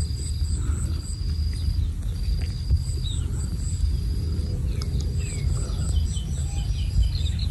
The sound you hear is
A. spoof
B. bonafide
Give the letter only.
B